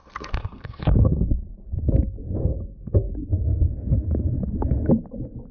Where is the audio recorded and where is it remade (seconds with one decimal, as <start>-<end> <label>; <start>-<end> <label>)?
0.0-1.3 remade; 1.3-2.4 recorded; 2.4-3.1 remade; 3.1-5.5 recorded